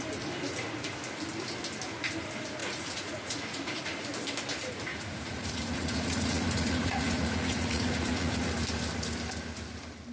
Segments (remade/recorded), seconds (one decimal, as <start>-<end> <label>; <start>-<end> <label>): 0.0-2.6 recorded; 2.6-3.8 remade; 3.8-4.9 recorded; 4.9-8.5 remade; 8.5-10.1 recorded